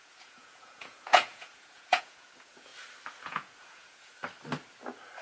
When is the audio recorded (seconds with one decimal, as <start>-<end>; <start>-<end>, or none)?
2.7-3.2; 4.2-5.2